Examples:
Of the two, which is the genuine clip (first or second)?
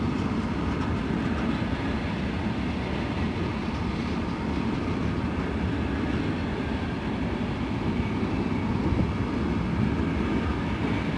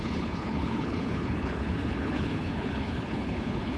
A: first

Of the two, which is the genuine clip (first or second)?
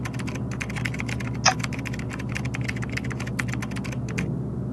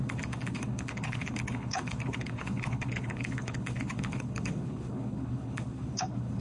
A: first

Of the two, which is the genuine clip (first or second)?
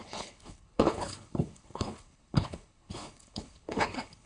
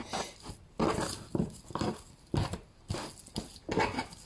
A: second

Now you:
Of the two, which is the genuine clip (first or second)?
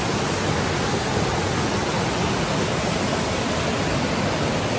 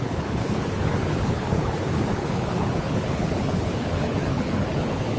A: first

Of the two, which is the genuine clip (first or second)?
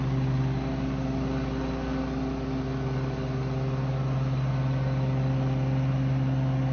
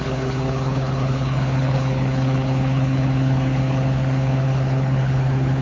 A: first